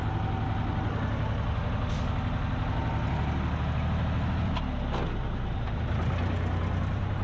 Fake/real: real